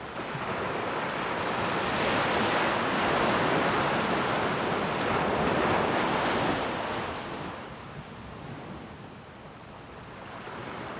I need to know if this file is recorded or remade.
recorded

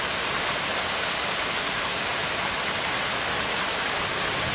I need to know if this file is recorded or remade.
recorded